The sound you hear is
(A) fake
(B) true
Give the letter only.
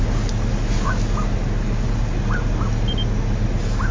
B